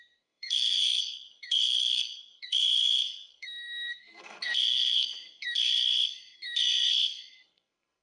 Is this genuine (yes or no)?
no